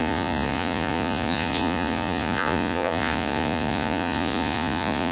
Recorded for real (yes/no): no